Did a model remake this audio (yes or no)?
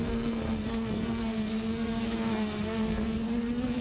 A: yes